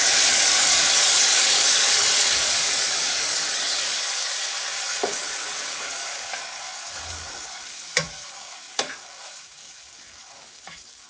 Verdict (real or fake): fake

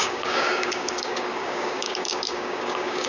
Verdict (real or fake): fake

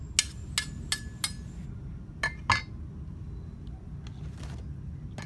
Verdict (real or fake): real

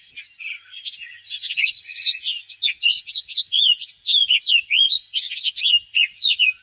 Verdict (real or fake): real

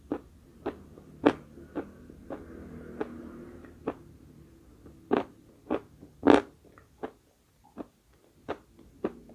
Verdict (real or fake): real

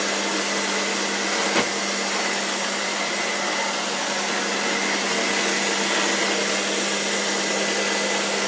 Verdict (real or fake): real